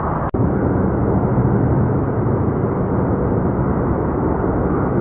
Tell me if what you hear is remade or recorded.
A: recorded